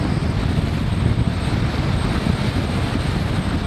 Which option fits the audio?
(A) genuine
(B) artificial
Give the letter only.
A